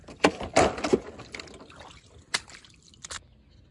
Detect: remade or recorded recorded